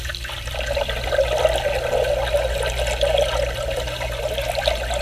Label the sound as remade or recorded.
recorded